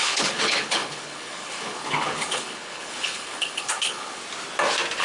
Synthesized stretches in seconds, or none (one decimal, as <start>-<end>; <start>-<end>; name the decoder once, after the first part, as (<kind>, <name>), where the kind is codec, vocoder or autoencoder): 0.0-4.2 (codec, HILCodec)

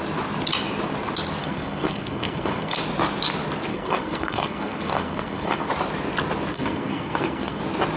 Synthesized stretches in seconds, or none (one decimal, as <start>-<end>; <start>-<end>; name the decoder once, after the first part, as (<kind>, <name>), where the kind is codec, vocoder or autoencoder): 1.4-2.8 (codec, SNAC); 3.7-5.7; 6.5-7.6

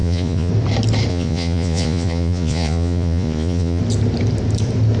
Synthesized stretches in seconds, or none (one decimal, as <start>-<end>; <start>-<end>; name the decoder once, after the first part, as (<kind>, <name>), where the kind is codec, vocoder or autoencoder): 0.0-0.5 (vocoder, Vocos); 1.1-3.8